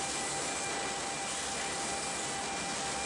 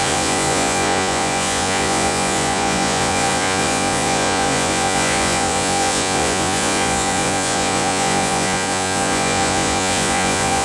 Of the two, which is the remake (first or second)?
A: second